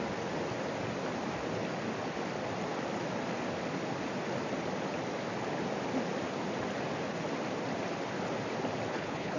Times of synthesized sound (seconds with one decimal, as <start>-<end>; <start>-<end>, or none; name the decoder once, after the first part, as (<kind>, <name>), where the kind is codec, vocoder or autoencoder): 8.9-9.4 (codec, HILCodec)